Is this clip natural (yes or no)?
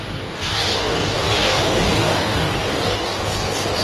no